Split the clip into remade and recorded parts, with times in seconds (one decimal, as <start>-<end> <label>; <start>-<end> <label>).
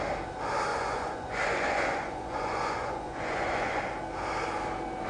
0.0-0.7 recorded; 0.7-3.8 remade; 3.8-5.1 recorded